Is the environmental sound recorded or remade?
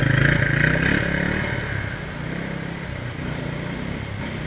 recorded